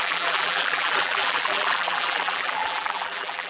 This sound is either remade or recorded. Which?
remade